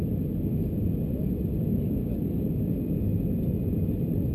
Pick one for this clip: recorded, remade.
recorded